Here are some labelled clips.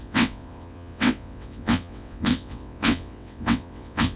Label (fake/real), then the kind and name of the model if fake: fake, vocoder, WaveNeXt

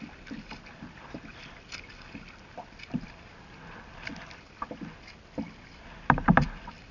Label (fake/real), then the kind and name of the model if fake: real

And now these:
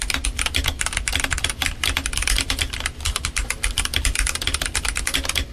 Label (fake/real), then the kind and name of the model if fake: real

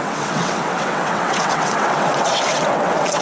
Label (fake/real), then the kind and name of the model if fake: fake, vocoder, WaveNeXt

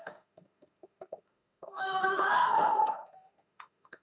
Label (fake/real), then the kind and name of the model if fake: fake, autoencoder, DAC-VAE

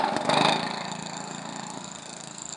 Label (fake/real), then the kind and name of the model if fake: fake, codec, SNAC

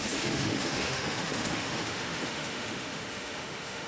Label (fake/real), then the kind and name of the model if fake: fake, autoencoder, DAC-VAE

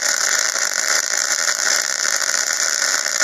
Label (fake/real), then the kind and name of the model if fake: fake, vocoder, BigVGAN v2